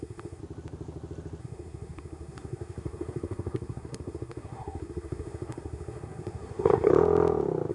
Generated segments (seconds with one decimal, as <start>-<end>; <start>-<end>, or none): 0.0-0.4; 1.4-6.9